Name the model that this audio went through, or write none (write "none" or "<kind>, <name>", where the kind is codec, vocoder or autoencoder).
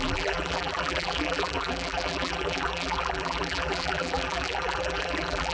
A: vocoder, BigVGAN v2